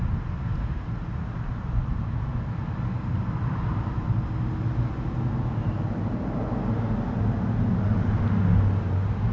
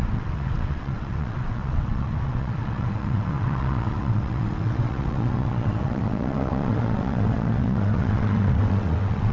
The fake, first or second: second